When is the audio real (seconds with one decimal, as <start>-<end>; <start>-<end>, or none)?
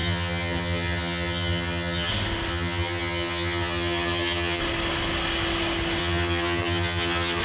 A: 2.1-2.5; 4.6-6.0